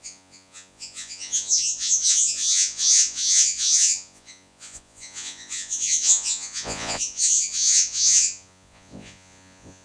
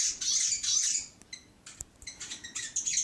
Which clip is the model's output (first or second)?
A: first